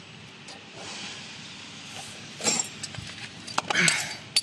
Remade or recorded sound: recorded